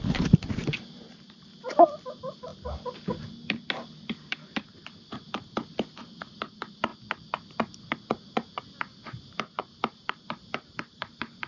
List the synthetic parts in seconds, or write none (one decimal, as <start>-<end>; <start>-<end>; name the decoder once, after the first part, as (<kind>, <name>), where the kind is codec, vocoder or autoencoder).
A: 0.0-2.5 (vocoder, BigVGAN v2); 4.2-6.9; 8.8-11.5

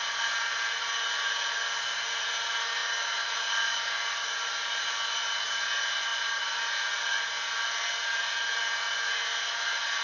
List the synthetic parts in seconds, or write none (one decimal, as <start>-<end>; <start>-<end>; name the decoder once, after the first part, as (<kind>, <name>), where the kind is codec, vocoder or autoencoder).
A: none

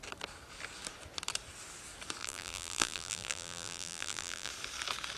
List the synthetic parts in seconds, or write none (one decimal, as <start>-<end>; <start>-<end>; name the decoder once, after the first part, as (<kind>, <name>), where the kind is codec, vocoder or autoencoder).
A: 2.2-4.5 (vocoder, BigVGAN v2)

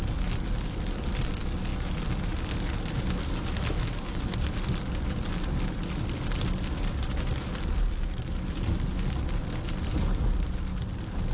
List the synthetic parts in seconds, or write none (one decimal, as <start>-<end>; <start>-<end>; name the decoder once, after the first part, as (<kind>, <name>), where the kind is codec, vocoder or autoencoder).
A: none